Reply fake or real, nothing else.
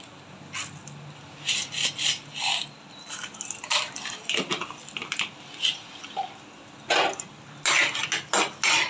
real